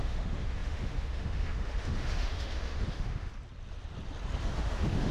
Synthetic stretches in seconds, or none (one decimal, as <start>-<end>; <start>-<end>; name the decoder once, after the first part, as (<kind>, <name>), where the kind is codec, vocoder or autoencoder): 0.0-3.3 (autoencoder, DAC-VAE); 4.4-5.1